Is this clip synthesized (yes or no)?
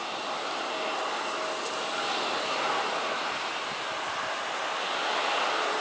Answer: no